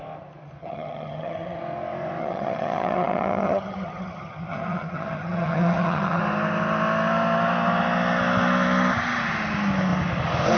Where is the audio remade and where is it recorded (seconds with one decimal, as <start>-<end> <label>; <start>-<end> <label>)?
0.0-0.6 recorded; 0.6-1.6 remade; 1.6-2.2 recorded; 2.2-6.2 remade; 6.2-10.6 recorded